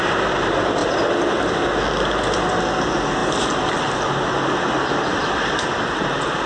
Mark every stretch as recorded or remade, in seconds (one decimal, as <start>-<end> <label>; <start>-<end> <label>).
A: 0.0-5.1 recorded; 5.1-5.7 remade; 5.7-6.5 recorded